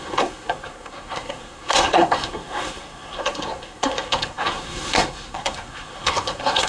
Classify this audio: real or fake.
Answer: fake